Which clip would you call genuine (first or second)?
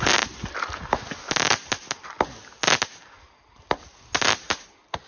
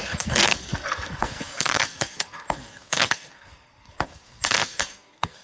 first